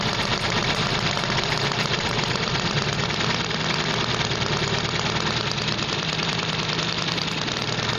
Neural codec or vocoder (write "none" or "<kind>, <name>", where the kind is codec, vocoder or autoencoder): vocoder, BigVGAN v2